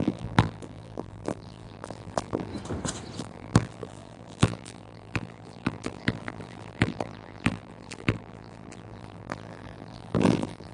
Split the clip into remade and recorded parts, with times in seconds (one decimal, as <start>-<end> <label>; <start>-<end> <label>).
0.0-2.5 remade; 2.5-3.2 recorded; 3.2-10.7 remade